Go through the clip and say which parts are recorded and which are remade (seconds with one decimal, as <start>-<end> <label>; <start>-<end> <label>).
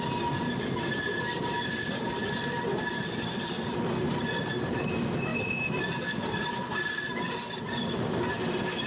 0.0-8.9 recorded